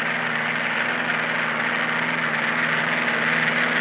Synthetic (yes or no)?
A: no